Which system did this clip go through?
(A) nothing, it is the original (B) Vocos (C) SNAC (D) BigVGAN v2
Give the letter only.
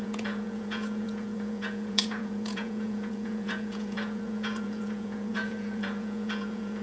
B